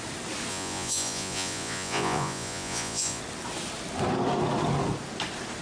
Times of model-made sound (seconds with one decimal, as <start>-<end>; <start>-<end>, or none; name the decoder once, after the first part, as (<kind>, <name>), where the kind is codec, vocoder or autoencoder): 0.5-3.2 (vocoder, Vocos)